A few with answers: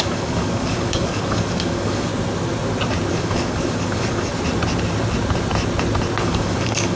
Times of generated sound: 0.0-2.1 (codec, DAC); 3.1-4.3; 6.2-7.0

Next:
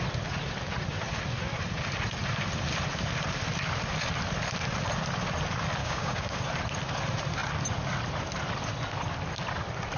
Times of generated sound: 5.8-6.4 (codec, DAC)

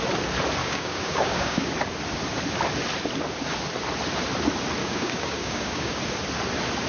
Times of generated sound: 0.6-1.7 (codec, DAC); 4.8-6.0

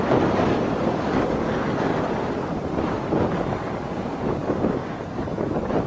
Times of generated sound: 0.0-1.9 (codec, DAC); 3.3-5.9

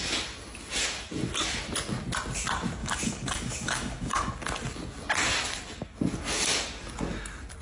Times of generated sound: 2.8-4.3 (codec, DAC)

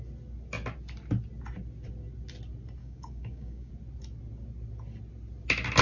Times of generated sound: 2.8-3.7 (codec, DAC)

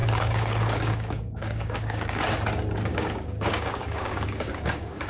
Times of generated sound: 0.0-2.2 (codec, DAC); 2.9-5.1